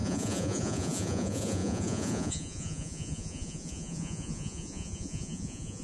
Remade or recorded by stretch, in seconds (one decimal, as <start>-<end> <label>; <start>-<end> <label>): 0.0-5.8 remade